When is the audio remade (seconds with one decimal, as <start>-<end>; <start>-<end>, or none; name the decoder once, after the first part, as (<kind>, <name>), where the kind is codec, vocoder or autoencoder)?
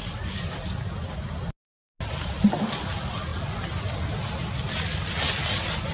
none